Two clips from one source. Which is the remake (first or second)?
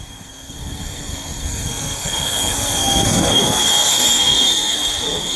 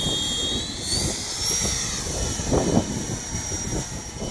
first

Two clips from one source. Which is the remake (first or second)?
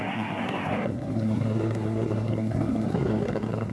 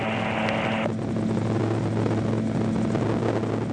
first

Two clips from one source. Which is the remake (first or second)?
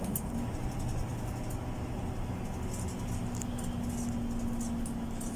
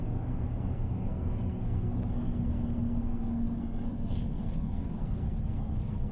second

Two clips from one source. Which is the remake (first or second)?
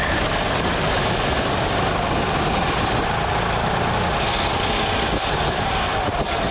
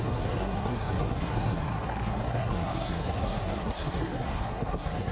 second